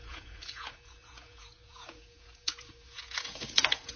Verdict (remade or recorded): remade